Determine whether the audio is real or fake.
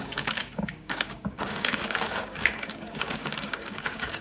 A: fake